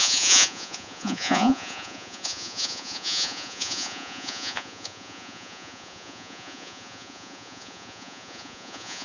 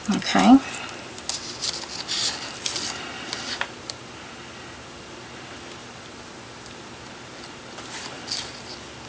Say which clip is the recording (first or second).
second